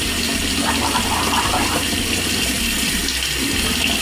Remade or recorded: recorded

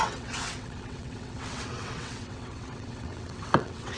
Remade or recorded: remade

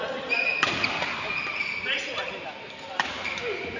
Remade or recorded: recorded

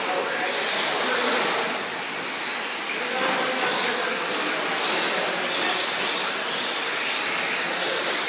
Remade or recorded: remade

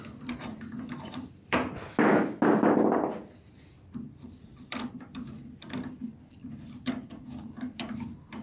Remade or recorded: recorded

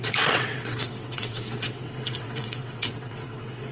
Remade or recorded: remade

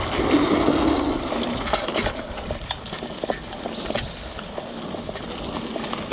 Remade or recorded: recorded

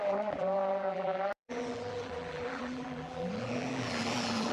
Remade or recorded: remade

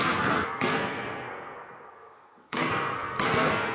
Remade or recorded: remade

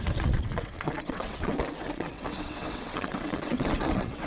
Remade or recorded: remade